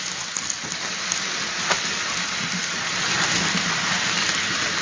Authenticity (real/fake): real